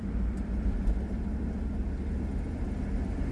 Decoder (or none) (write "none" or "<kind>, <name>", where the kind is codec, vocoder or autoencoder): none